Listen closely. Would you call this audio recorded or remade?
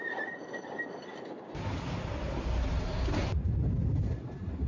recorded